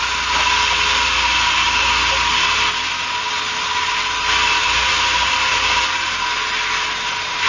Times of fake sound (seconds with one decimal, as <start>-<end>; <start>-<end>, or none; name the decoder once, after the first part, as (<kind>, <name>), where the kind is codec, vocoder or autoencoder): none

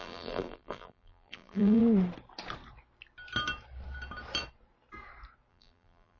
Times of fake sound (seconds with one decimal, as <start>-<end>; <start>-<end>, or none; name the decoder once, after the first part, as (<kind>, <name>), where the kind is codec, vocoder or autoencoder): 0.0-1.8 (vocoder, BigVGAN v2); 5.5-6.2

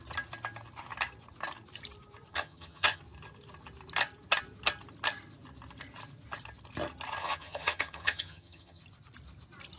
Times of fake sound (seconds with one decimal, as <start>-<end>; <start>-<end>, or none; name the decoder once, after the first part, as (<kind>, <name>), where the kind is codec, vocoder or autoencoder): 2.3-3.0 (vocoder, HiFi-GAN); 7.2-8.8

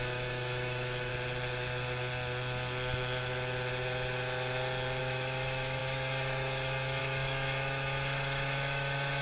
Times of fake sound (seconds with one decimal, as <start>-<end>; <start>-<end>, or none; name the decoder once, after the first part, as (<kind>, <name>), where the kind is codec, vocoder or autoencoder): 0.0-1.1 (autoencoder, DAC-VAE); 5.0-9.2

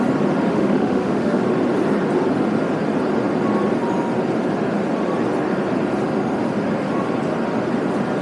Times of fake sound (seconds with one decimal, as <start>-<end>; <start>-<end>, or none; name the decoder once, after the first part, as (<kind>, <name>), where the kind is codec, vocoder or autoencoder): 0.5-1.4 (autoencoder, DAC-VAE)